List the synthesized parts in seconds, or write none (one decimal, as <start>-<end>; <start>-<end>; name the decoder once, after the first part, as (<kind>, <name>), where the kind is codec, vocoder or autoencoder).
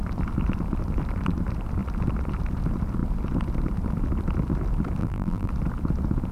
5.0-5.5 (vocoder, BigVGAN v2)